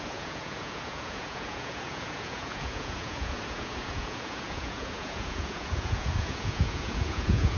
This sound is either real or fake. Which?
fake